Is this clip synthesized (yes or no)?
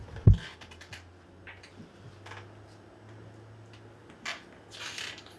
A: no